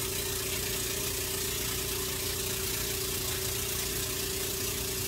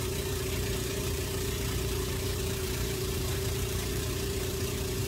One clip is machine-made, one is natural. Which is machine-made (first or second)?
second